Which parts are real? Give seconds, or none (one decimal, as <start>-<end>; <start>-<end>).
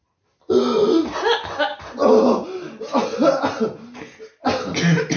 0.0-5.2